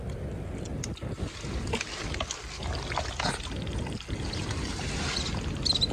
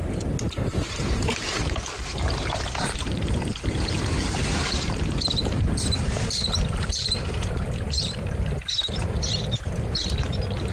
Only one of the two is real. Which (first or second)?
first